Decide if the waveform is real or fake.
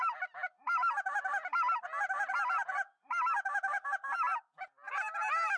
real